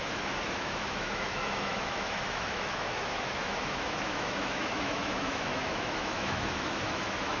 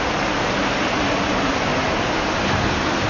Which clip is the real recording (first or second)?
second